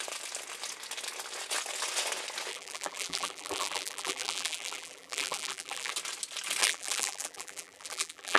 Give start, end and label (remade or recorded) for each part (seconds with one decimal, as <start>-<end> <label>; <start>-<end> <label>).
0.0-2.5 recorded; 2.5-5.9 remade; 5.9-6.6 recorded; 6.6-8.4 remade